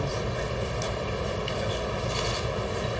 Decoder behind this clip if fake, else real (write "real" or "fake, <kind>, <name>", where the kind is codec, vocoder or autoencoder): real